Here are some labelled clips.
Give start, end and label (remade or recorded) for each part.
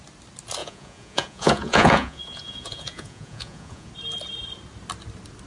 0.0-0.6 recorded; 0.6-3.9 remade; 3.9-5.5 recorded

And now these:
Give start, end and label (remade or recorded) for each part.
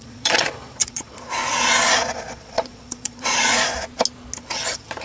0.0-1.4 remade; 1.4-2.2 recorded; 2.2-3.7 remade; 3.7-5.0 recorded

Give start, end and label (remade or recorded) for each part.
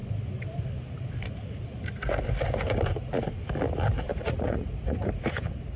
0.0-4.1 recorded; 4.1-5.2 remade; 5.2-5.8 recorded